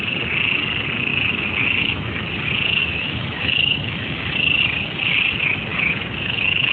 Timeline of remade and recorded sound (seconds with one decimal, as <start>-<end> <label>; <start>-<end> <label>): 0.0-1.1 recorded; 1.1-2.3 remade; 2.3-2.8 recorded; 2.8-4.6 remade; 4.6-5.7 recorded; 5.7-6.7 remade